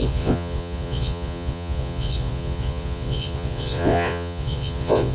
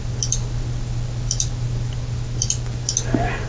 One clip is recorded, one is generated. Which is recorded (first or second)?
second